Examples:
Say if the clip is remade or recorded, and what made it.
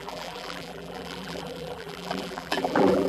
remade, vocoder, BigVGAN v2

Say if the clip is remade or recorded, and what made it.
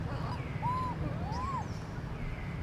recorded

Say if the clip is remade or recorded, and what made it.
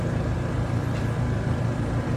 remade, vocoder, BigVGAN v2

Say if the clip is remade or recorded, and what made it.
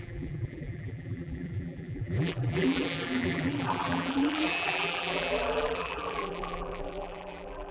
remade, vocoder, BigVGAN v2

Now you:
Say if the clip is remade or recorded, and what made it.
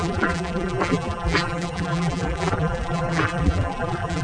remade, vocoder, BigVGAN v2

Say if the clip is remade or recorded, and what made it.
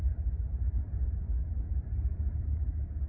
remade, vocoder, BigVGAN v2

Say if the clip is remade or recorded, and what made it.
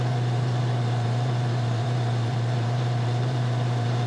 remade, vocoder, BigVGAN v2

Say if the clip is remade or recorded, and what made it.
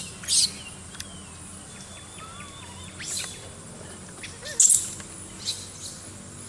recorded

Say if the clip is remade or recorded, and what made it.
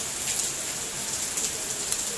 recorded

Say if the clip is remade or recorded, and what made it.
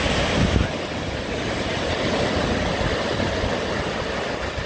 recorded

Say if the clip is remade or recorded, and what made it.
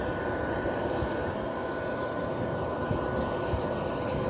recorded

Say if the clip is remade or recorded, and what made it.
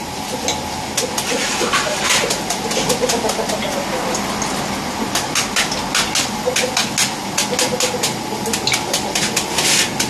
recorded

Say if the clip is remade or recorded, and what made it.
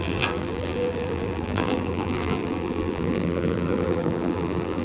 remade, vocoder, BigVGAN v2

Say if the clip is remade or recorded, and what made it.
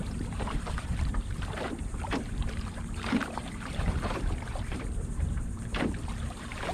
remade, vocoder, BigVGAN v2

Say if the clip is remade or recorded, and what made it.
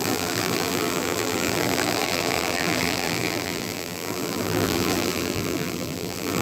remade, vocoder, BigVGAN v2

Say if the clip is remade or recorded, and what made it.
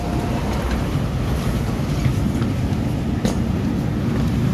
recorded